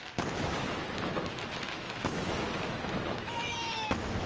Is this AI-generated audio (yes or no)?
yes